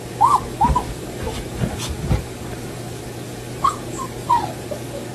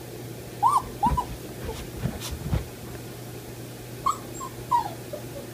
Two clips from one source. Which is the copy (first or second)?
first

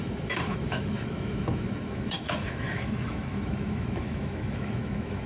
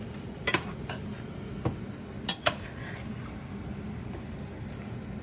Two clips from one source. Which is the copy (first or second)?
first